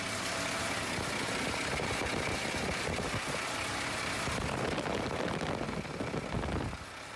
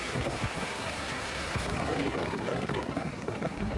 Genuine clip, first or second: first